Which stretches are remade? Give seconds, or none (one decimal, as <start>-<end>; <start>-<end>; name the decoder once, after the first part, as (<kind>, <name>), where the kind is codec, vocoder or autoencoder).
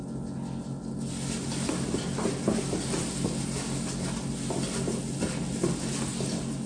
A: none